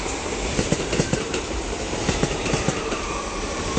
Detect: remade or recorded remade